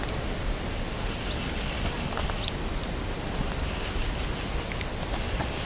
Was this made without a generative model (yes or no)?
yes